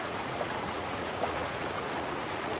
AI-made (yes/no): yes